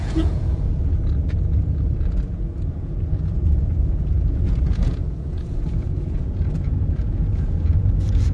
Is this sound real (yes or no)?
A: no